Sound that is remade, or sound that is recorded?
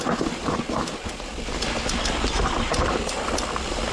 recorded